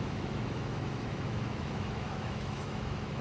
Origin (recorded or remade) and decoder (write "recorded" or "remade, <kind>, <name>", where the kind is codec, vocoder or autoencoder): remade, autoencoder, DAC-VAE